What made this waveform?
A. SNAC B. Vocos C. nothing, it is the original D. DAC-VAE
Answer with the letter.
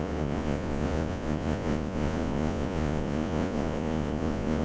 B